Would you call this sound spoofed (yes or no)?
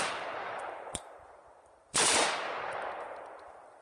yes